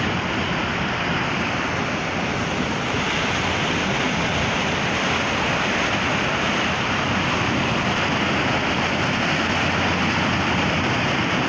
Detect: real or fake real